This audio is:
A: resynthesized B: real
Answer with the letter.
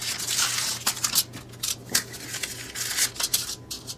B